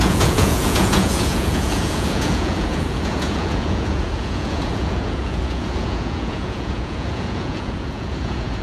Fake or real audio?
fake